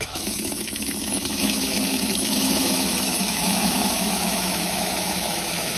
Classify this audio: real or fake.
fake